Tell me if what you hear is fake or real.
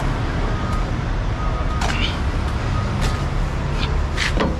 real